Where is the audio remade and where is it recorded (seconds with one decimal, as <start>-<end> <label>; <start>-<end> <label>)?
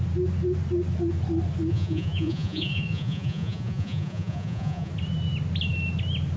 0.0-1.7 recorded; 1.7-4.9 remade; 4.9-6.4 recorded